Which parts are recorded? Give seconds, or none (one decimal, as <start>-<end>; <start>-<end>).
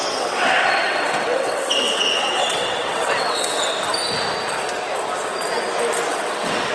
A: 3.7-6.1